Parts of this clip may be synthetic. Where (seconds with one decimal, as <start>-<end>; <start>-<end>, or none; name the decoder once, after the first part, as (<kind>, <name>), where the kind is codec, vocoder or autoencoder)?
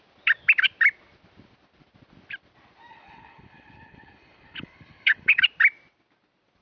2.9-5.4 (codec, HILCodec)